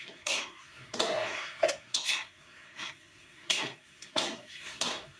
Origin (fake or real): fake